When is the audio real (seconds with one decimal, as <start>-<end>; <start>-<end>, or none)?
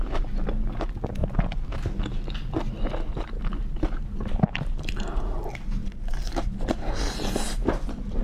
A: 0.0-3.1; 4.4-5.8